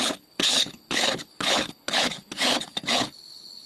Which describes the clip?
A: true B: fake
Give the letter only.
B